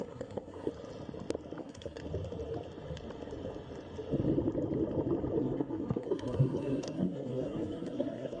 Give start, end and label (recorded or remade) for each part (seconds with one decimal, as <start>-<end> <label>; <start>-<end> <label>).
0.0-0.7 remade; 0.7-1.6 recorded; 1.6-2.0 remade; 2.0-5.4 recorded; 5.4-8.4 remade